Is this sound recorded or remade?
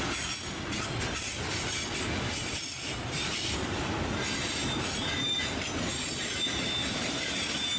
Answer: recorded